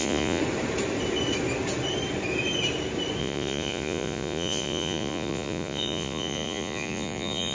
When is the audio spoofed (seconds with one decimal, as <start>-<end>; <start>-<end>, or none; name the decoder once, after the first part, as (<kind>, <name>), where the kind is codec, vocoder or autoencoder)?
0.0-0.4 (vocoder, Vocos); 3.2-7.5